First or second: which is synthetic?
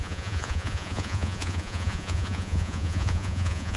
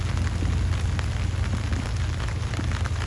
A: first